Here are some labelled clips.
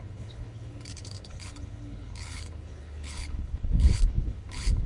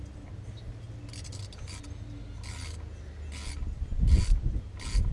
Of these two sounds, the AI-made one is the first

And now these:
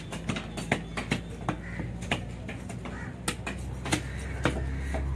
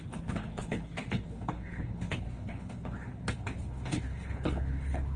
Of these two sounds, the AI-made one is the second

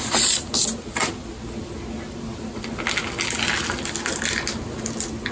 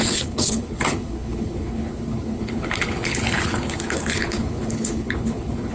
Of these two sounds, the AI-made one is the second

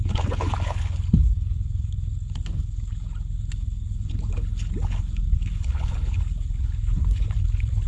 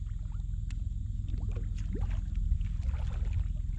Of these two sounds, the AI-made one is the first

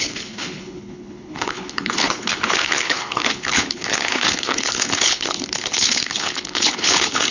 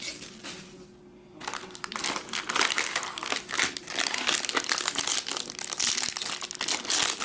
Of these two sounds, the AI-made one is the first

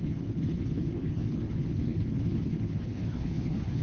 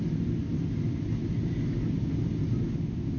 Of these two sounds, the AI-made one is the first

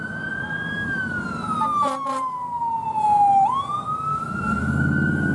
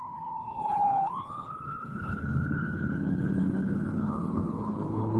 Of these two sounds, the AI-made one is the second